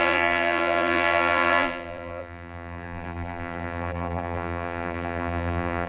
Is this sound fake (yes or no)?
yes